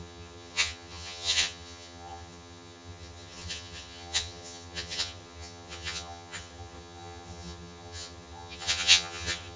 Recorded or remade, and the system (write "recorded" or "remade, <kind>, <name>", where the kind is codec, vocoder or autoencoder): remade, vocoder, HiFi-GAN